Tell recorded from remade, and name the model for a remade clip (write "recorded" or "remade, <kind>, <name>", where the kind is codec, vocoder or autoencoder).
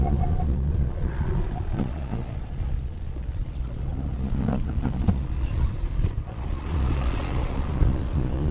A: remade, vocoder, Vocos